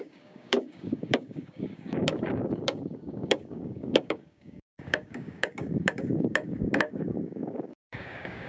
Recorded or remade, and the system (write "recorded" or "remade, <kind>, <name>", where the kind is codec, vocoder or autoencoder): remade, codec, DAC